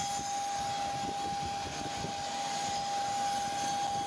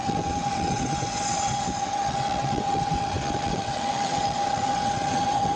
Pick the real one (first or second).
first